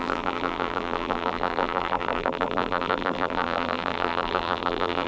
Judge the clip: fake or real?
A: fake